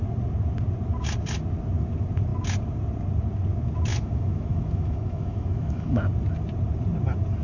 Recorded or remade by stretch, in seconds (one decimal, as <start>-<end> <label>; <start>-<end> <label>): 0.0-3.9 recorded; 3.9-6.0 remade; 6.0-7.4 recorded